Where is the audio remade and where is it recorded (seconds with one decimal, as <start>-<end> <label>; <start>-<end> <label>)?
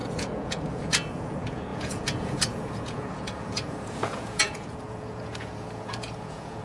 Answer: 0.0-6.6 remade